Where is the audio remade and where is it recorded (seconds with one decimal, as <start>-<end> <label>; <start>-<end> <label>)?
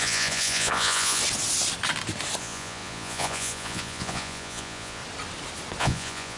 0.0-1.2 remade; 1.2-2.4 recorded; 2.4-5.0 remade; 5.0-5.8 recorded; 5.8-6.4 remade